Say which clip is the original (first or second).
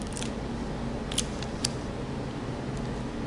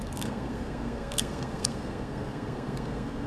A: first